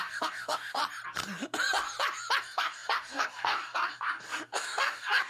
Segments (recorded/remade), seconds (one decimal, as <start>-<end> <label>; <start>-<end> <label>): 0.0-0.8 remade; 0.8-2.4 recorded; 2.4-5.3 remade